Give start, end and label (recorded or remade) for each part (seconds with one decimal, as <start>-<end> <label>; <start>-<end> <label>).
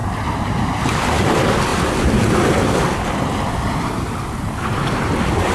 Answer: 0.0-0.8 remade; 0.8-5.5 recorded